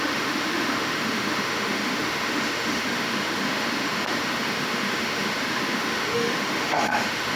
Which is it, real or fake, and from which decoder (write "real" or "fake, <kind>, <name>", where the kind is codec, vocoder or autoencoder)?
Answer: fake, autoencoder, DAC-VAE